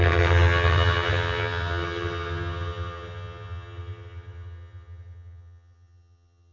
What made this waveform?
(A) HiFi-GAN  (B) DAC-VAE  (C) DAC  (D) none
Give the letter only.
A